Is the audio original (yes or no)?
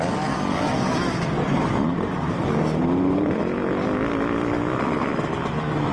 yes